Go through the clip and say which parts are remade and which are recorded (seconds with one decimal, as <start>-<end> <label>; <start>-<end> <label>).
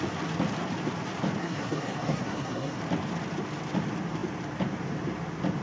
0.0-1.4 recorded; 1.4-2.8 remade; 2.8-5.6 recorded